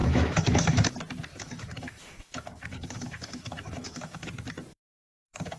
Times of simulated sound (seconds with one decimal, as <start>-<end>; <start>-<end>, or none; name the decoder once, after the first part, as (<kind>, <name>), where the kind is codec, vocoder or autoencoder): 0.0-0.9 (autoencoder, DAC-VAE); 1.3-4.3; 4.7-5.6